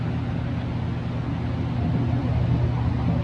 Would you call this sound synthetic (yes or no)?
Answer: no